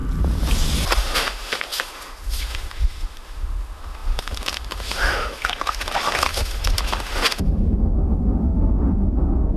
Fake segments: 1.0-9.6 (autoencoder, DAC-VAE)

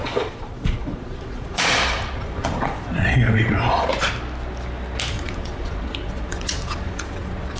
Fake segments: 0.0-3.9 (vocoder, Vocos); 5.1-7.6

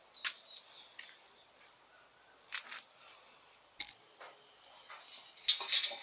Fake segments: none

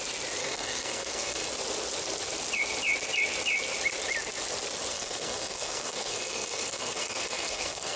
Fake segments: 0.4-1.5 (codec, SNAC); 4.9-8.0

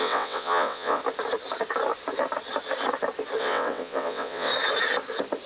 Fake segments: 0.0-1.0 (vocoder, WaveNeXt); 3.4-4.5